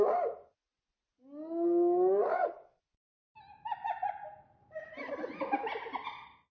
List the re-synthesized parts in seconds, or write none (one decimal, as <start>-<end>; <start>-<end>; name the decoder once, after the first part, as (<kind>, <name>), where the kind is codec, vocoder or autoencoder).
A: 2.3-2.8 (vocoder, WaveNeXt)